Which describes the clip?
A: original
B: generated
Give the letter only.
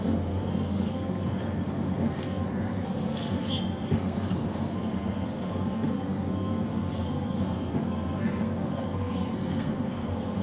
B